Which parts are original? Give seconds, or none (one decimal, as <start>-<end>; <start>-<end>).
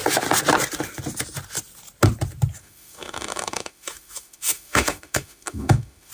0.0-2.6